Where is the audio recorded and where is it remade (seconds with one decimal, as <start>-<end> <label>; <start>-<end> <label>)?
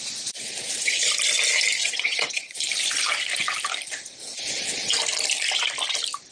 0.0-0.6 recorded; 0.6-1.1 remade; 1.1-1.8 recorded; 1.8-2.6 remade; 2.6-4.2 recorded; 4.2-4.9 remade; 4.9-6.3 recorded